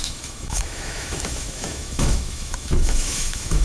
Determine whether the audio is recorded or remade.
remade